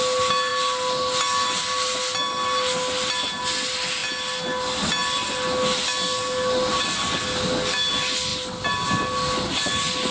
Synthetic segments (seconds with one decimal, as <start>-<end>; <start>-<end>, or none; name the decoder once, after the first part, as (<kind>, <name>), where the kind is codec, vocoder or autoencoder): none